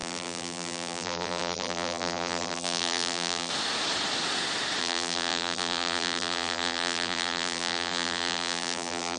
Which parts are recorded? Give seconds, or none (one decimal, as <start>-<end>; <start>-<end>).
3.5-4.8